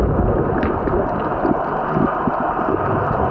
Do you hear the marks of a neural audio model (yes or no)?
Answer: no